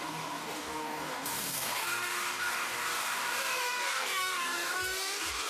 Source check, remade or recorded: remade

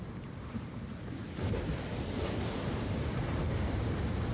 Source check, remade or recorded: recorded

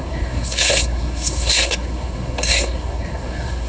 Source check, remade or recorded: remade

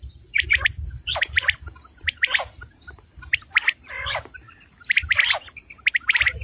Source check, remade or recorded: remade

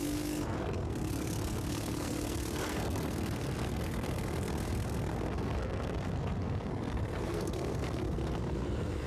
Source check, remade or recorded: remade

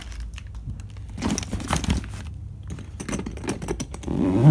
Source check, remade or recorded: recorded